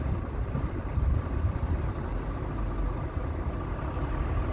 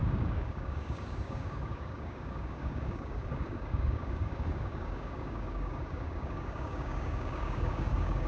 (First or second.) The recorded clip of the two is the first